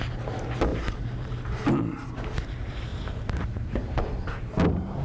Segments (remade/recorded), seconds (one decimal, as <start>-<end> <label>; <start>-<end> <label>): 0.0-0.7 recorded; 0.7-1.3 remade; 1.3-2.9 recorded; 2.9-4.0 remade; 4.0-5.0 recorded